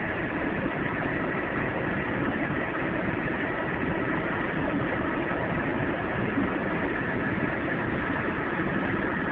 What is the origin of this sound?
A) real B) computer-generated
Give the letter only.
A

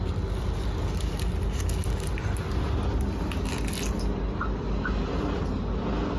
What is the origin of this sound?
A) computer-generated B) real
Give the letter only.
B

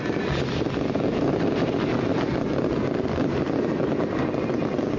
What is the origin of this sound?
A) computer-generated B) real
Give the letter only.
B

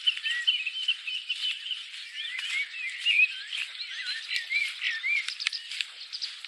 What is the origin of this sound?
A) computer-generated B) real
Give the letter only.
B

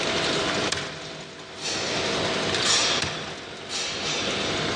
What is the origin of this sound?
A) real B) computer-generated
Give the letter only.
A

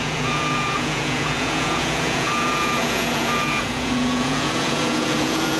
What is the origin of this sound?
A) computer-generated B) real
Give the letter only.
A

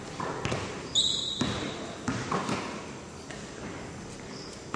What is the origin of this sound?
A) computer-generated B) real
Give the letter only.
B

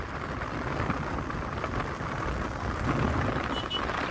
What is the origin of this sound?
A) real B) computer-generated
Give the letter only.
A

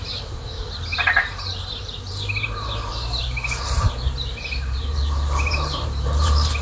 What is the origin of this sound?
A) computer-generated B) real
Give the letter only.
A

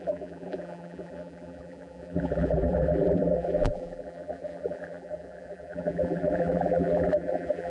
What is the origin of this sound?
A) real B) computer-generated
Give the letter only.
B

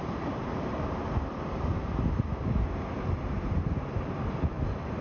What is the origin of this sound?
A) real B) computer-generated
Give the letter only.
B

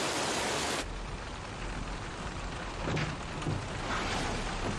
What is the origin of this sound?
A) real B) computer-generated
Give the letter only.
A